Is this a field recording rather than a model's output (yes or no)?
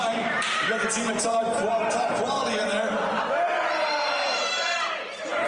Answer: no